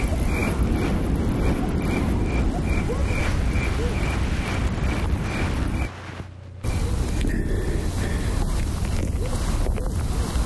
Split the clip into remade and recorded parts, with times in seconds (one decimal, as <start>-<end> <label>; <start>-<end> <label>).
0.0-10.5 recorded